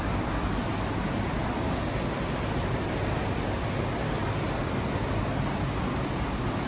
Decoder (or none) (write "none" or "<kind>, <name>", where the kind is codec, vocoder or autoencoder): none